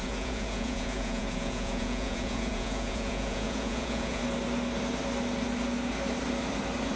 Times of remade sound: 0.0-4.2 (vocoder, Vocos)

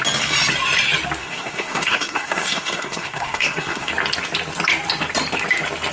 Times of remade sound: 1.2-3.9 (codec, SNAC)

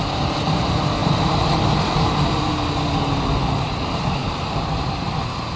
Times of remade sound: 1.0-2.4 (vocoder, BigVGAN v2); 4.2-4.7

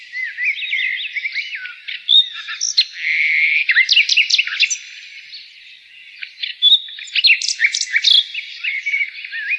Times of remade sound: 3.1-4.4 (vocoder, BigVGAN v2)

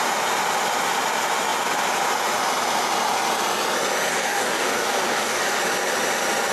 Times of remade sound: 4.1-5.6 (codec, DAC)

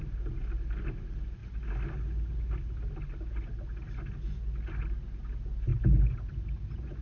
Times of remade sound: none